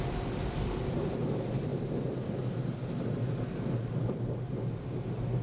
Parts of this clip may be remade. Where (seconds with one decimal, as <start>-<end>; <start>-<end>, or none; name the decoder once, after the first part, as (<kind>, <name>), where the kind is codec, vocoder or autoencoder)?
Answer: none

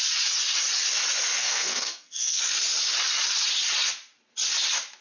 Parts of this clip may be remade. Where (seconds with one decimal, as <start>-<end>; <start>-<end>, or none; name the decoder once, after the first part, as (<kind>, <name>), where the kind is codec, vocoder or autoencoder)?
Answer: 1.4-2.4 (codec, SNAC)